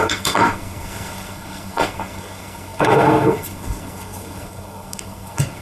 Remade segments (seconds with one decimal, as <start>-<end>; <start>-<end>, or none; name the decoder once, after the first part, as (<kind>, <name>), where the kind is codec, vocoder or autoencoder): 0.0-5.6 (codec, SNAC)